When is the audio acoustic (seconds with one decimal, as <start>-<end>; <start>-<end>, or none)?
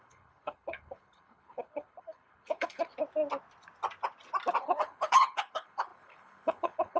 2.9-4.6